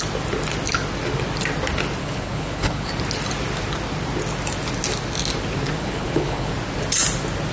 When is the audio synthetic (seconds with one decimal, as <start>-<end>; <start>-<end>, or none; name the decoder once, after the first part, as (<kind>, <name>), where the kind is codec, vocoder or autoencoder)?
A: 2.0-2.9 (codec, HILCodec); 5.8-6.5

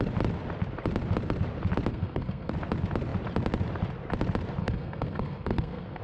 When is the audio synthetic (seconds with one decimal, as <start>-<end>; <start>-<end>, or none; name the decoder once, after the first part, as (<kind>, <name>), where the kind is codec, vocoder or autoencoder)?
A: 1.9-2.5 (codec, SNAC); 4.6-6.0

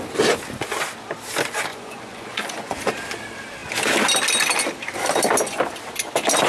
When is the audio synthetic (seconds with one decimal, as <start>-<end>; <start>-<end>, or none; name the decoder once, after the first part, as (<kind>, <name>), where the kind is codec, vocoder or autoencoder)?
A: 1.7-2.9 (vocoder, Vocos)

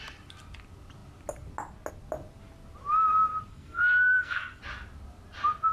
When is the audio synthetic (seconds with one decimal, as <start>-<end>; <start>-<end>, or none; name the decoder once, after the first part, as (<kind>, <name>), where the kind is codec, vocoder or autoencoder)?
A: 3.5-4.6 (codec, SNAC)

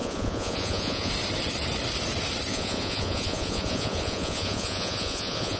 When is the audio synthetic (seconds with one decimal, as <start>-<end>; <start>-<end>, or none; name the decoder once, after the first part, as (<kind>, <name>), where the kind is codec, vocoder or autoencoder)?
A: 0.0-1.1 (vocoder, Vocos); 2.5-5.6

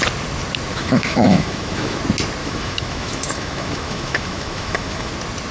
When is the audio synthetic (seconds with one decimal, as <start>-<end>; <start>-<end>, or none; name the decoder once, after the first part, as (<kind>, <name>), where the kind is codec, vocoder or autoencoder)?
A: 0.7-2.0 (autoencoder, DAC-VAE); 2.4-5.1

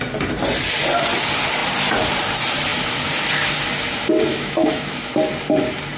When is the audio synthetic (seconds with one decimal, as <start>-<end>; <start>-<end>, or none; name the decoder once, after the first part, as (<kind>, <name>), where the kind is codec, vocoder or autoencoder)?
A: 4.3-5.1 (autoencoder, DAC-VAE)

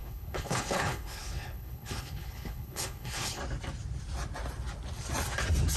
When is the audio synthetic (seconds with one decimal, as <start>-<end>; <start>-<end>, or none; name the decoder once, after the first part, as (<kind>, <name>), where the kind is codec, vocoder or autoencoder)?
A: 0.0-3.4 (codec, HILCodec)